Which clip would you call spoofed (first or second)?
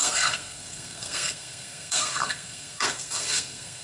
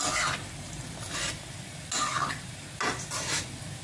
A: first